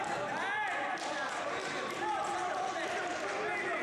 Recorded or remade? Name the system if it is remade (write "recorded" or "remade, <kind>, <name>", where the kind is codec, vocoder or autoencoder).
recorded